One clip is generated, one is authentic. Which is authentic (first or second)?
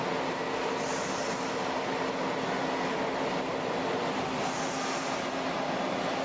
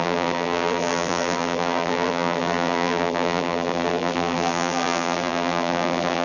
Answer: first